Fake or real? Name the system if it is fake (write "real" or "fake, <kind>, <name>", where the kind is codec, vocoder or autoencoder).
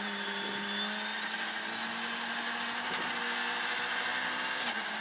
real